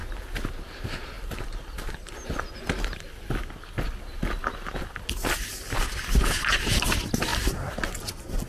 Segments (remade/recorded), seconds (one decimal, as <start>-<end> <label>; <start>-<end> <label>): 0.0-8.5 recorded